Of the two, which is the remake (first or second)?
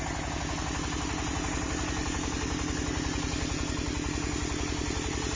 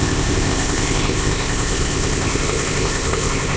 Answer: second